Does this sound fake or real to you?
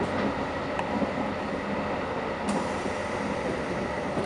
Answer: real